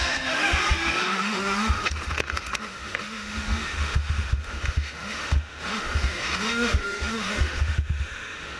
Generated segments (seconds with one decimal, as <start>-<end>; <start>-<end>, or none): 0.0-8.6